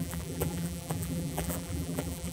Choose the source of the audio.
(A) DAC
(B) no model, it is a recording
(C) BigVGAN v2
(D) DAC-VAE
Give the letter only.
C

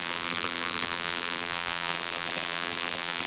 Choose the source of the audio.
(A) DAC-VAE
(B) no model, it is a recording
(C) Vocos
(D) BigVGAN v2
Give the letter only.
D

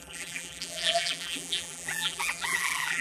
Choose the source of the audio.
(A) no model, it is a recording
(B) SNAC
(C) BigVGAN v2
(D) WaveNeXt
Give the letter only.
C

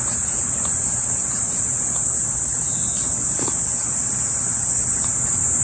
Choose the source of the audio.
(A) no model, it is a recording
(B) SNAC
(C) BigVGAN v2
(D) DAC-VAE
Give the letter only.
C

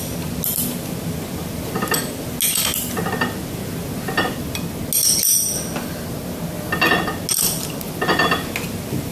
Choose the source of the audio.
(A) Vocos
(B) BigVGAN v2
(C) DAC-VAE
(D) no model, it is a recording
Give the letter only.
D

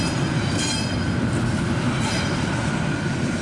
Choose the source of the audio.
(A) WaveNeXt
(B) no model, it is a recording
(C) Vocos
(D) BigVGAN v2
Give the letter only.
B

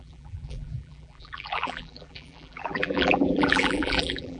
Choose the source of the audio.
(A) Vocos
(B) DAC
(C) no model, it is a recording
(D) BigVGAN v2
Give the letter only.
D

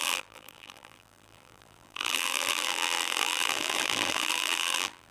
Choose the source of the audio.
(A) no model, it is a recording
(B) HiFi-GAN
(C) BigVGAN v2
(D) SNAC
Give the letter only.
C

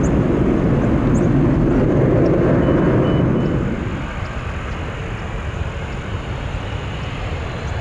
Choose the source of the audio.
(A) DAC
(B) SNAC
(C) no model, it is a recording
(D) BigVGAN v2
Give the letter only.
C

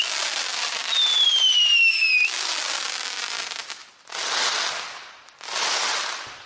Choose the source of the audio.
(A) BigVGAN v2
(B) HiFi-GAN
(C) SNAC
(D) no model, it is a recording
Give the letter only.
D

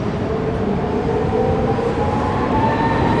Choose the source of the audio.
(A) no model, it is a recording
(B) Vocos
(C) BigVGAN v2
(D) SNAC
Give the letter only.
C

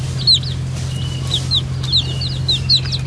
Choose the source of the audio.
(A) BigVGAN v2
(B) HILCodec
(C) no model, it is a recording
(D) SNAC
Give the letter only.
C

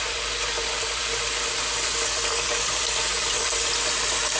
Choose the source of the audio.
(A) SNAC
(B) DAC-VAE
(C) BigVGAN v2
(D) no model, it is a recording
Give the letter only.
C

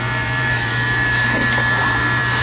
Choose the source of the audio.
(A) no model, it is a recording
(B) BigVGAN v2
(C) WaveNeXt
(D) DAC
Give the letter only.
B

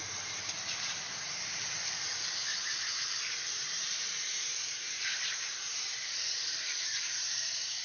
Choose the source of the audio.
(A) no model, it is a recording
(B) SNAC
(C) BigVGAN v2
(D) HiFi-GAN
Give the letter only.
C